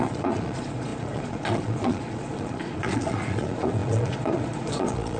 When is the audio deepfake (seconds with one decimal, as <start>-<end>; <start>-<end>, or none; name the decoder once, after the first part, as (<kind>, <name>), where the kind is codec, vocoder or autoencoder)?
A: 0.0-5.2 (vocoder, Vocos)